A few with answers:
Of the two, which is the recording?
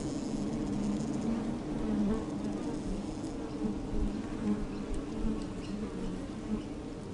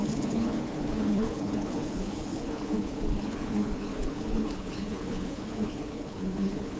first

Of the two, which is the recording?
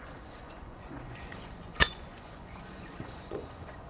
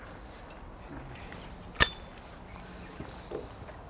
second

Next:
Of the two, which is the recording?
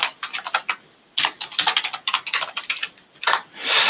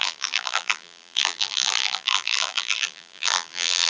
first